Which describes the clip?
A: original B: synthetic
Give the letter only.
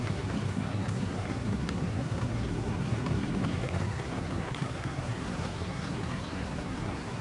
B